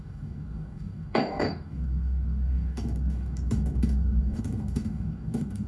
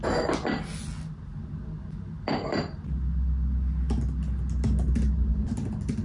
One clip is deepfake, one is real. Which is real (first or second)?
second